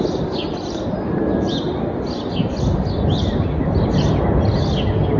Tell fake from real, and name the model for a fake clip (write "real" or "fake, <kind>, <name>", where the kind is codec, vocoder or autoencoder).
real